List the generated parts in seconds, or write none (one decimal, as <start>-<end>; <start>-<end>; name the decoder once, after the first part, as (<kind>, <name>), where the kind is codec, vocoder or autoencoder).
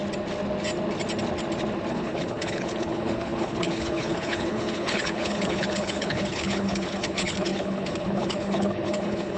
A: 1.9-9.4 (codec, HILCodec)